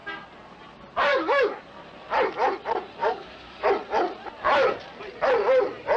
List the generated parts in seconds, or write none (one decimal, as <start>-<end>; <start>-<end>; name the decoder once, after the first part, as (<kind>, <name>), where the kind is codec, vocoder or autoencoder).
1.1-1.7 (codec, DAC); 3.0-3.7